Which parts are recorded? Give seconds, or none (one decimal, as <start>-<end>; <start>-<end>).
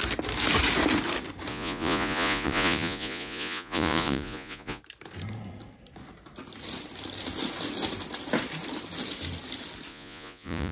0.0-1.5; 4.8-9.9